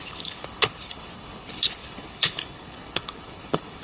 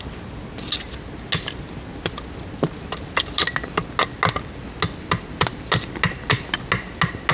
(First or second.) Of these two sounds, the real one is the second